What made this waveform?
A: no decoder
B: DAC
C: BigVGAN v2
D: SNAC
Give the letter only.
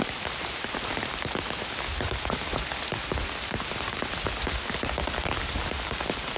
A